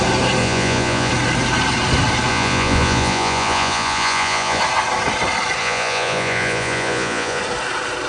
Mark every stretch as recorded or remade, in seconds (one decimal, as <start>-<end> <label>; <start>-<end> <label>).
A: 0.0-0.4 recorded; 0.4-1.1 remade; 1.1-2.3 recorded; 2.3-4.6 remade; 4.6-5.6 recorded; 5.6-7.4 remade; 7.4-8.1 recorded